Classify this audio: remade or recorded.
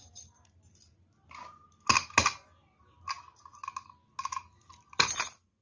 recorded